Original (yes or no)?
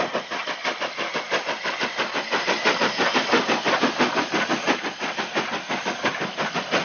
yes